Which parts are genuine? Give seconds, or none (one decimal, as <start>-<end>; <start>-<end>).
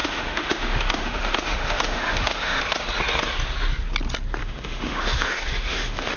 2.6-4.4